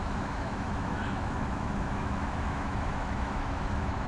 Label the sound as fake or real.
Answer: fake